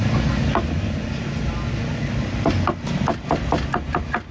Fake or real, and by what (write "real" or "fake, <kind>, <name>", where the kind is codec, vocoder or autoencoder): real